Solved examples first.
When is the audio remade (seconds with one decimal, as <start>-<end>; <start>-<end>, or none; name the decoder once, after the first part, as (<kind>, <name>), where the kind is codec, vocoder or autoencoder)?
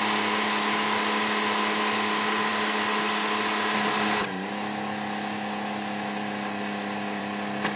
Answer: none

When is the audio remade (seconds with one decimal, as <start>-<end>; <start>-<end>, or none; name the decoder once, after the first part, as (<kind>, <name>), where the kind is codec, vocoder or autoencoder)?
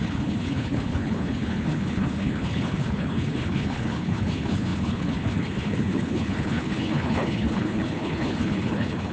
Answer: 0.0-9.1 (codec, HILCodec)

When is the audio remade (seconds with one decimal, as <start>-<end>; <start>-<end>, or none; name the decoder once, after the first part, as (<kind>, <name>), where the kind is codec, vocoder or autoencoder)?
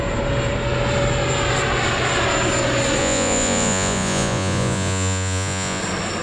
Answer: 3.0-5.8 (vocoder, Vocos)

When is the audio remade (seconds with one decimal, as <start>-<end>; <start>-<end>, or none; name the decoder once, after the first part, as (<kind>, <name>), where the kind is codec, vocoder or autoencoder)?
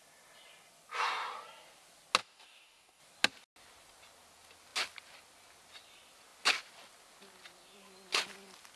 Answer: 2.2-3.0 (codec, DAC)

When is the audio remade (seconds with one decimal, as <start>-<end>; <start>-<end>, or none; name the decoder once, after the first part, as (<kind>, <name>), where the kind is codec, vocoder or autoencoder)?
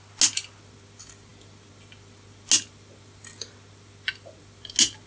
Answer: none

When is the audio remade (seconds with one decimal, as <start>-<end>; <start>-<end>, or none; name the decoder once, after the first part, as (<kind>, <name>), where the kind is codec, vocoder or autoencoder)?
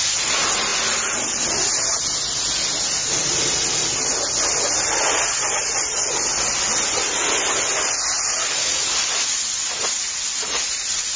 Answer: none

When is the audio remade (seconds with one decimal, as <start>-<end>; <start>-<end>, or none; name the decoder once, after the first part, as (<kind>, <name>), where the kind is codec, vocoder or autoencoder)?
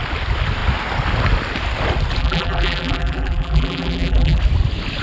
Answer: 2.2-4.4 (vocoder, BigVGAN v2)